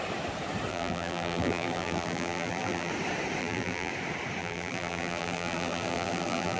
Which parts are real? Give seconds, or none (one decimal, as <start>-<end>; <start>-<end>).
0.0-0.7; 2.9-3.4; 3.9-4.4